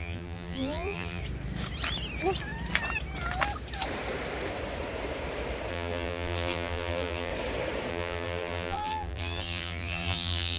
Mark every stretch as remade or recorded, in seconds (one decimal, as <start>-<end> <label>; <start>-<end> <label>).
0.0-1.2 remade; 1.2-5.7 recorded; 5.7-7.3 remade; 7.3-7.9 recorded; 7.9-10.6 remade